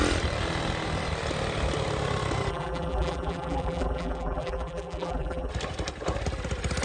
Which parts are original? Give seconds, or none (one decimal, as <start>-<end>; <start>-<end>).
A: 0.0-2.5; 5.5-6.8